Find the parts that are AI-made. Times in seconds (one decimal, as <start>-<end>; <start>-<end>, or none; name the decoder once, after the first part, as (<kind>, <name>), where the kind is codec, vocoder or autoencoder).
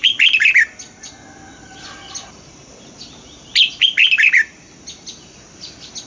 none